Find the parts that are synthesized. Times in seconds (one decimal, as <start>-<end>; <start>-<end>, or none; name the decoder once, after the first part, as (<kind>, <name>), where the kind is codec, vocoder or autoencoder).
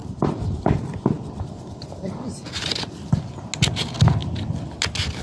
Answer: 0.0-3.1 (vocoder, BigVGAN v2); 4.2-4.8